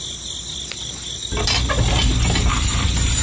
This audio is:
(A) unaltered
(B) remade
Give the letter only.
A